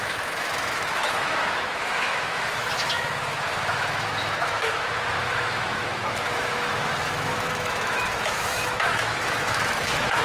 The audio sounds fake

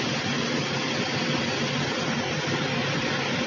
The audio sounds real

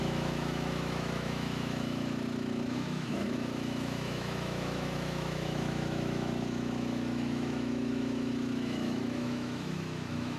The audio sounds fake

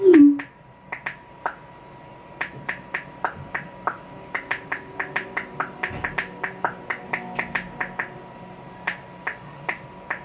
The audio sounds real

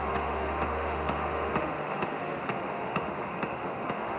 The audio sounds fake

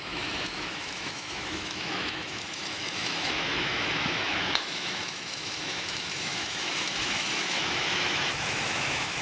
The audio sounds fake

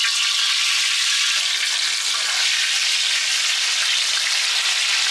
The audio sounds real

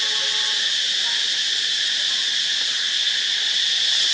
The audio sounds real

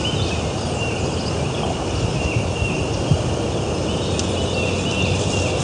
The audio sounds real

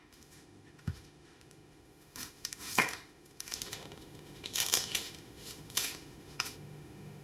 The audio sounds fake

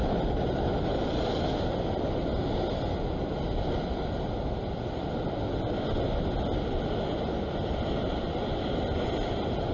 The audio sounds real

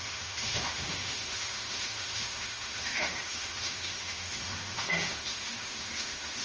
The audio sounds fake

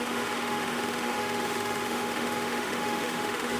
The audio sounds fake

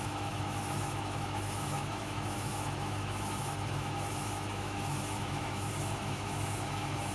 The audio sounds fake